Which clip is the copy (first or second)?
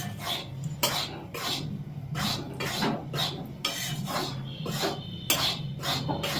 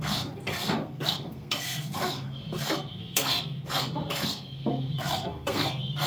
second